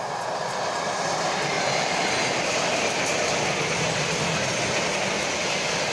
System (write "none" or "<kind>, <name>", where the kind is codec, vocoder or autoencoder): none